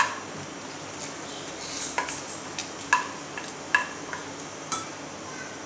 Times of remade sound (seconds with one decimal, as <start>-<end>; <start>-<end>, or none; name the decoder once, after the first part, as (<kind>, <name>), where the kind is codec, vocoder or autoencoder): none